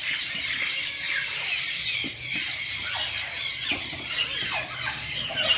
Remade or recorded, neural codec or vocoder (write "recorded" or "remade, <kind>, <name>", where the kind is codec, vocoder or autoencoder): remade, vocoder, BigVGAN v2